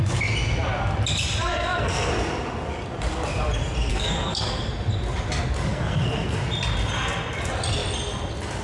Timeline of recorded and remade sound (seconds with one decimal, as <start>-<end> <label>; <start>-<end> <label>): 0.0-1.4 recorded; 1.4-2.1 remade; 2.1-3.9 recorded; 3.9-4.7 remade; 4.7-5.7 recorded; 5.7-6.4 remade; 6.4-8.6 recorded